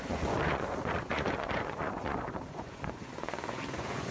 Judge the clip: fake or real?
fake